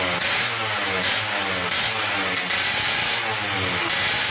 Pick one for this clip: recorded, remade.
recorded